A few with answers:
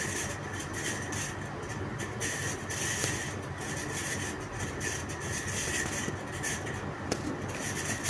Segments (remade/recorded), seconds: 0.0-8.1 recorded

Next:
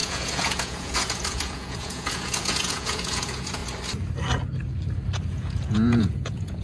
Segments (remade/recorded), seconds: 0.0-3.6 remade; 3.6-5.3 recorded; 5.3-6.6 remade

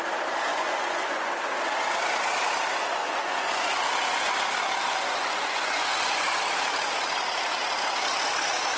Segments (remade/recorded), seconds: 0.0-0.5 recorded; 0.5-1.3 remade; 1.3-3.0 recorded; 3.0-4.3 remade; 4.3-4.8 recorded; 4.8-6.4 remade; 6.4-8.8 recorded